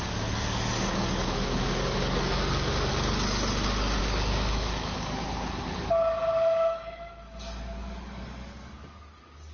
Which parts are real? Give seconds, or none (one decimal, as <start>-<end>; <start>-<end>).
2.9-4.0